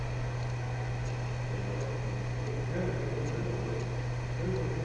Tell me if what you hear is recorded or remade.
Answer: recorded